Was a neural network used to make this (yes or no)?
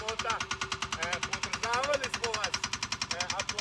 no